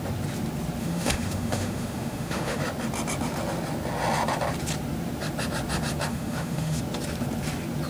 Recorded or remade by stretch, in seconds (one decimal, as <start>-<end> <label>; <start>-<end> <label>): 0.0-0.8 recorded; 0.8-2.6 remade; 2.6-6.1 recorded; 6.1-6.8 remade; 6.8-7.9 recorded